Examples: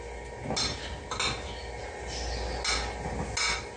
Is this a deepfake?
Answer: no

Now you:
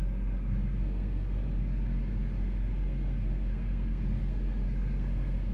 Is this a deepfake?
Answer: yes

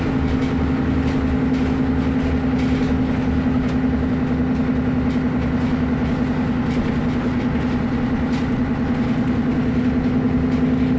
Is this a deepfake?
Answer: no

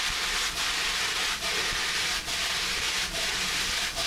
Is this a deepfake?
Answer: no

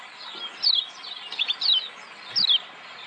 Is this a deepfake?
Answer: no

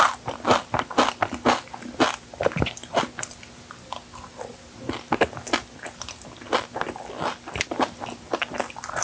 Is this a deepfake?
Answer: no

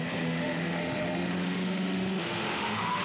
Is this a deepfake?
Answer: yes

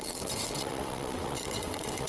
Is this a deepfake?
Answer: yes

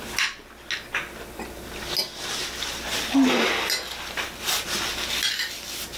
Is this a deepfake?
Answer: no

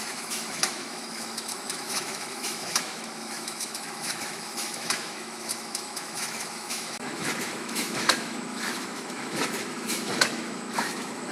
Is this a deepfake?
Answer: yes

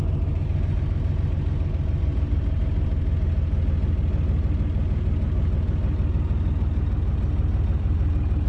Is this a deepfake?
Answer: no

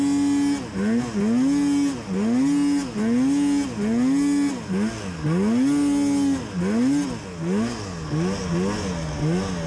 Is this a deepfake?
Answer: no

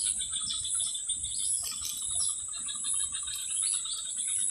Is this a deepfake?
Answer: no